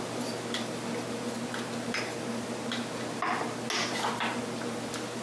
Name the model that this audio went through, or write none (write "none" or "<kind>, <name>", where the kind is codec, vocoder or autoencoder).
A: none